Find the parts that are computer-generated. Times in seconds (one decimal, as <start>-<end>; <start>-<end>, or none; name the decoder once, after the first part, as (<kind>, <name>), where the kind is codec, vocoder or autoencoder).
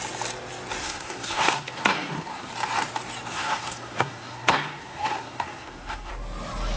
0.8-2.5 (codec, SNAC); 3.3-6.1